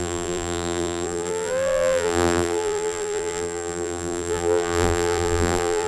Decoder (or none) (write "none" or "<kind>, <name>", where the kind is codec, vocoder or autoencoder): vocoder, BigVGAN v2